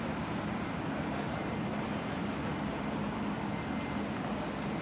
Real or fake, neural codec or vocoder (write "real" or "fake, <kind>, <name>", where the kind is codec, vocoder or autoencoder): real